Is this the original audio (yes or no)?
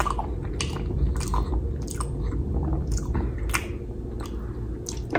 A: yes